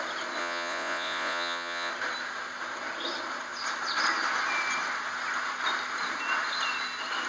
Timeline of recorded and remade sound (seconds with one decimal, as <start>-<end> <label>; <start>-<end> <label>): 0.0-0.4 recorded; 0.4-1.9 remade; 1.9-7.3 recorded